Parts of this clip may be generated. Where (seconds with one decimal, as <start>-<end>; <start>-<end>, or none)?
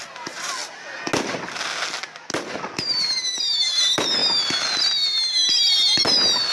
none